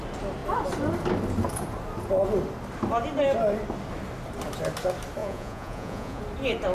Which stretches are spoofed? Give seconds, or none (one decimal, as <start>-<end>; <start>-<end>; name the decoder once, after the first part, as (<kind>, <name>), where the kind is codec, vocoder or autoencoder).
5.2-6.2 (vocoder, Vocos)